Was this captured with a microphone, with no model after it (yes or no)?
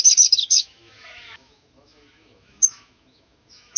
no